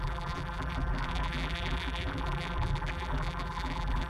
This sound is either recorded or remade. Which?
remade